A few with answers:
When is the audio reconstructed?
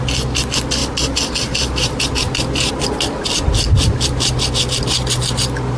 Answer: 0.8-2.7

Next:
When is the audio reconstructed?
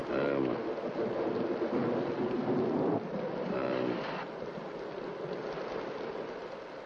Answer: none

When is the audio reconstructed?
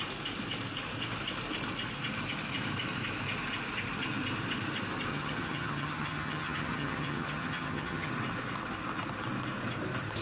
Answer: 5.1-8.1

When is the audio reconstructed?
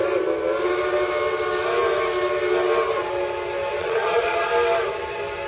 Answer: 3.8-4.5